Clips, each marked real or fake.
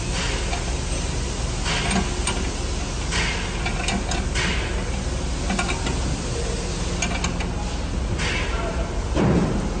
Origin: real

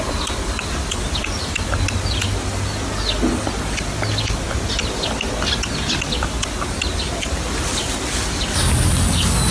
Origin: real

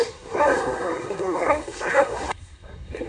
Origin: fake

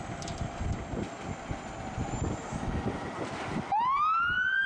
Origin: real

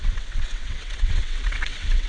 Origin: fake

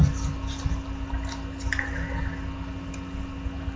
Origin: real